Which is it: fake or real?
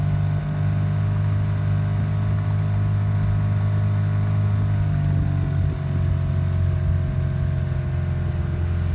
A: real